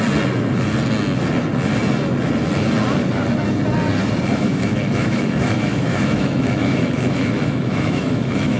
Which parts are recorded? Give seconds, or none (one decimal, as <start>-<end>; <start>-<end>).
0.0-4.3